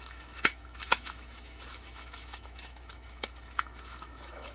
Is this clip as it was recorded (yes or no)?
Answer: no